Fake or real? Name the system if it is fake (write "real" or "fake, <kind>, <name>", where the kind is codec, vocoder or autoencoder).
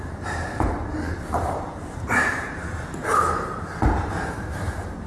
fake, vocoder, BigVGAN v2